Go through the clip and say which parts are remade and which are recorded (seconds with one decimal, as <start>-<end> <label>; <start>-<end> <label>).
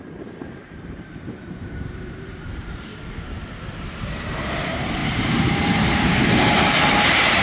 0.0-2.9 remade; 2.9-3.8 recorded; 3.8-7.4 remade